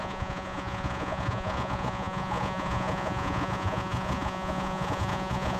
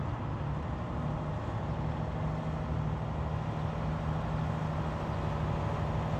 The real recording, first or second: second